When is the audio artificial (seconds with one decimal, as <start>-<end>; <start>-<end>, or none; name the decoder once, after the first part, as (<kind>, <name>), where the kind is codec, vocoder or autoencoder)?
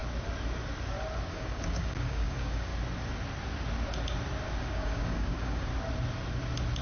1.3-2.7 (codec, DAC); 4.6-5.7